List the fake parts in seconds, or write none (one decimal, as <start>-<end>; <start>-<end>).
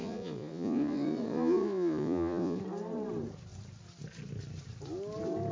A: 0.0-2.6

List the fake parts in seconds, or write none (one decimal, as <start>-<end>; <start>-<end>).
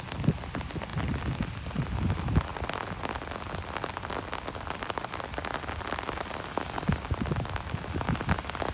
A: none